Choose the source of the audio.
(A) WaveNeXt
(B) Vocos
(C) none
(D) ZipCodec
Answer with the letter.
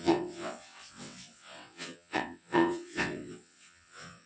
A